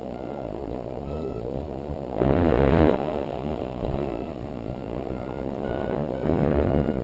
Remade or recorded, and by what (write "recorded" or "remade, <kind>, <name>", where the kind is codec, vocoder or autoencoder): remade, vocoder, Vocos